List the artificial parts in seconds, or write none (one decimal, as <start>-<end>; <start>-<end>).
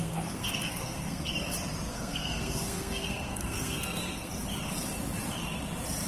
0.0-1.3; 1.9-4.3